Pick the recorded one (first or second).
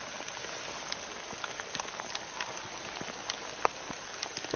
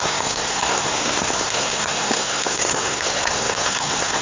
first